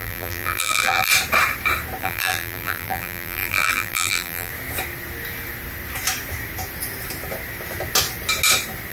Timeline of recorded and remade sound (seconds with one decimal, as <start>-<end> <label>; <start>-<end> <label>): 0.0-1.1 remade; 1.1-2.0 recorded; 2.0-4.5 remade; 4.5-8.9 recorded